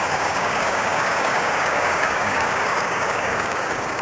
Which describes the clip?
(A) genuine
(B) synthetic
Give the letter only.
B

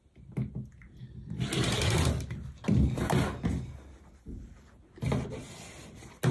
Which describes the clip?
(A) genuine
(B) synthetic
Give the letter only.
A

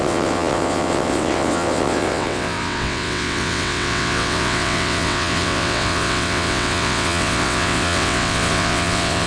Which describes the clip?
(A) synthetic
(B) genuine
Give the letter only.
A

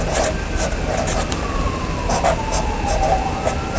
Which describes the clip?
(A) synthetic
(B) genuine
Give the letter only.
B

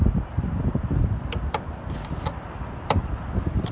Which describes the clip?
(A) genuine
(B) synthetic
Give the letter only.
B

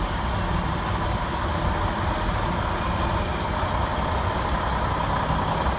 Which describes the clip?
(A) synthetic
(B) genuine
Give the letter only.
B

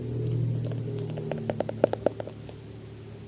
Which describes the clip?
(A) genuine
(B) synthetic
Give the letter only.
A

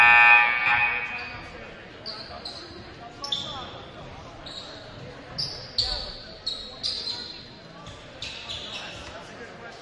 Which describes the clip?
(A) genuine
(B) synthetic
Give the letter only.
A